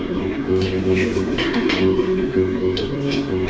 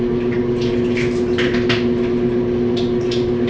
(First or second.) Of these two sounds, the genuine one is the second